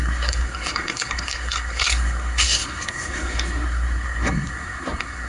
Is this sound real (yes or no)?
no